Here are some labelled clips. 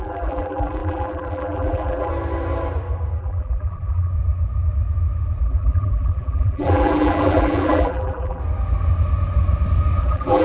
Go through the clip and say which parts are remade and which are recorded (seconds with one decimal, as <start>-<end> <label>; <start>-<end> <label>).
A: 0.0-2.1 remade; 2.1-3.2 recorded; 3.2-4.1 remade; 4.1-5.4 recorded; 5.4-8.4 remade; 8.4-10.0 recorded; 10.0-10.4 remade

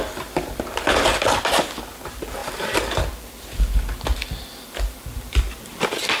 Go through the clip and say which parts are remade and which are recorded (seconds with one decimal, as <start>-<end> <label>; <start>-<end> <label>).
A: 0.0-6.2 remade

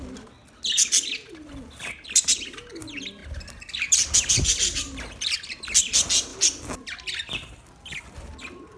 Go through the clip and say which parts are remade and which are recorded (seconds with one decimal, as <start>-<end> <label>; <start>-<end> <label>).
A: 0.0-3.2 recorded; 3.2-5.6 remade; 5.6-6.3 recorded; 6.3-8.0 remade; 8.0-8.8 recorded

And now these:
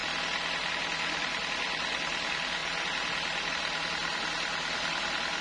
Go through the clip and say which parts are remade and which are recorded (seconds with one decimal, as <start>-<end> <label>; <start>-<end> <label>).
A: 0.0-0.7 remade; 0.7-5.4 recorded

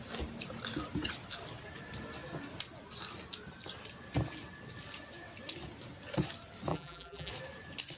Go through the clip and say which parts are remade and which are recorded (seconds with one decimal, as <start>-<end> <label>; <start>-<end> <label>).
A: 0.0-6.7 recorded; 6.7-7.3 remade; 7.3-8.0 recorded